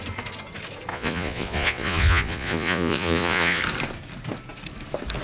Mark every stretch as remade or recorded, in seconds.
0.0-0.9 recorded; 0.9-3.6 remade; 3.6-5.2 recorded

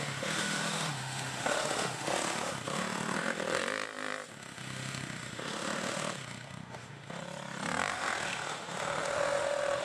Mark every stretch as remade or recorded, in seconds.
0.0-3.6 remade; 3.6-4.3 recorded; 4.3-7.2 remade; 7.2-7.9 recorded; 7.9-9.8 remade

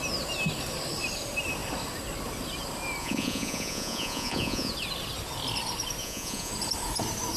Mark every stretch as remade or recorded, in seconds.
0.0-3.0 recorded; 3.0-4.7 remade; 4.7-6.0 recorded; 6.0-6.5 remade; 6.5-7.4 recorded

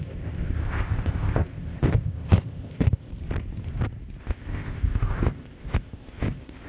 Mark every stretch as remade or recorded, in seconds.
0.0-3.1 remade; 3.1-4.2 recorded; 4.2-6.7 remade

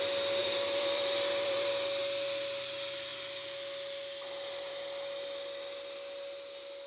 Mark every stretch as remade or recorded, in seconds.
0.0-0.4 recorded; 0.4-1.7 remade; 1.7-6.9 recorded

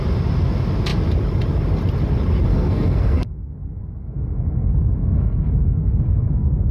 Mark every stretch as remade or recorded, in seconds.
0.0-2.5 recorded; 2.5-6.7 remade

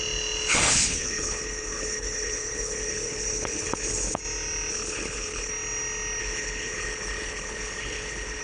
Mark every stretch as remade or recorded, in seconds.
0.0-0.5 recorded; 0.5-4.2 remade; 4.2-4.7 recorded; 4.7-5.5 remade; 5.5-6.2 recorded; 6.2-8.4 remade

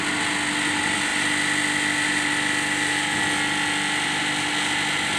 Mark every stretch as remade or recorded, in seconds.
0.0-5.2 recorded